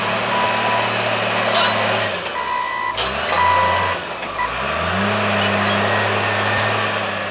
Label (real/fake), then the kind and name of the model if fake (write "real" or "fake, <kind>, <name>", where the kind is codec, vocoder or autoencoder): real